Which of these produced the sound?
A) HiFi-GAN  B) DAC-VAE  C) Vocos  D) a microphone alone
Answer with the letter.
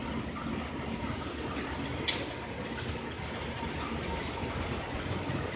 D